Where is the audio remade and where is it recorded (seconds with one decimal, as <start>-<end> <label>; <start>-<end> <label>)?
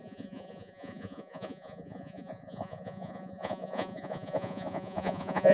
0.0-5.5 remade